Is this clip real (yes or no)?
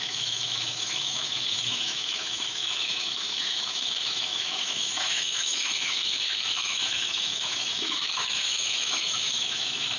no